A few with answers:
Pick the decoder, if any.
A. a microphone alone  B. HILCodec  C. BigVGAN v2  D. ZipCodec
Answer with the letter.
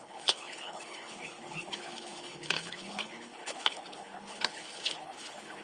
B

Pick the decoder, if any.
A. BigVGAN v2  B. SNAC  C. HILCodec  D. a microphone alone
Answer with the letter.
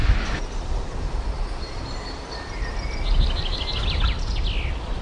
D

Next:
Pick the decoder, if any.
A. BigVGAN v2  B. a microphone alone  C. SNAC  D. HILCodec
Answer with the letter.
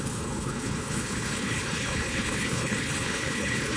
D